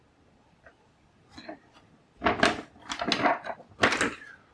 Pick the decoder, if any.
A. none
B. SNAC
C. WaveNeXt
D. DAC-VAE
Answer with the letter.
A